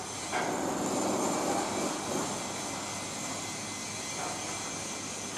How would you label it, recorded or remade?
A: recorded